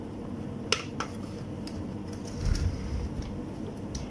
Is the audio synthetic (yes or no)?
no